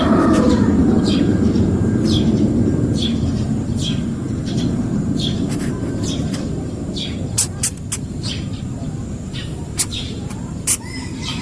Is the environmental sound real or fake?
fake